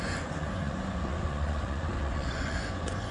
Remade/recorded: remade